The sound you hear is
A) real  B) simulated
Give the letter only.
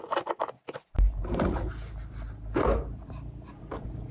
A